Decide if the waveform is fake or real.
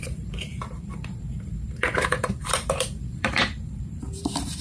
fake